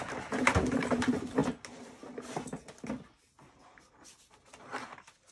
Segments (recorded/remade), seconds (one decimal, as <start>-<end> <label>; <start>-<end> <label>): 0.0-5.3 recorded